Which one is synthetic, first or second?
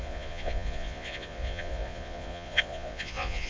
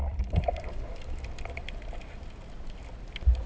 first